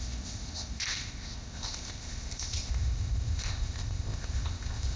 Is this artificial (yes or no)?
yes